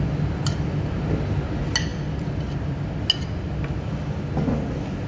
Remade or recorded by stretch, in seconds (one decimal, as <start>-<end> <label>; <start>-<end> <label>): 0.0-5.1 recorded